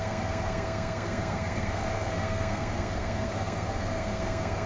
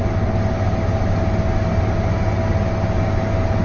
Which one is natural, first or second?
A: second